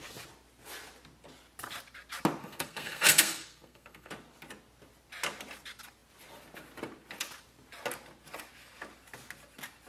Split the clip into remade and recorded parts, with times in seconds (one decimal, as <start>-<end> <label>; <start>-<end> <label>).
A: 0.0-2.4 recorded; 2.4-4.1 remade; 4.1-9.9 recorded